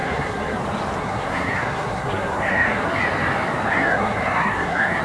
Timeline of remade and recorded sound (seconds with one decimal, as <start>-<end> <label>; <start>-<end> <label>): 0.0-0.6 remade; 0.6-1.0 recorded; 1.0-3.0 remade; 3.0-3.7 recorded; 3.7-5.0 remade